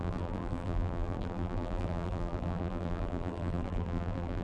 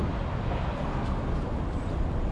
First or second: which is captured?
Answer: second